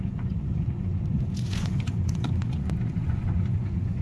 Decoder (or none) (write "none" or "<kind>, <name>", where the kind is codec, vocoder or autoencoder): vocoder, Vocos